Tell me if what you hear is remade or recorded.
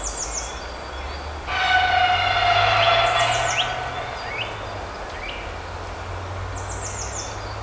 recorded